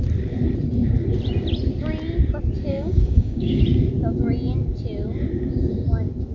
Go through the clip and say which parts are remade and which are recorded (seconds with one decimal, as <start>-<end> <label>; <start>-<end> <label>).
0.0-2.7 recorded; 2.7-3.6 remade; 3.6-6.3 recorded